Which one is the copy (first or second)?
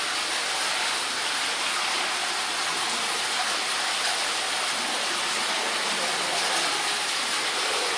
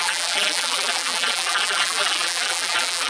second